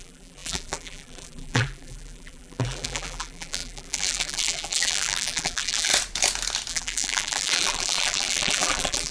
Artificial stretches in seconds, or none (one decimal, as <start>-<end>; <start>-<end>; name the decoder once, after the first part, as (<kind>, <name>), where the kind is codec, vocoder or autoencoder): 0.0-5.9 (vocoder, BigVGAN v2); 6.7-9.1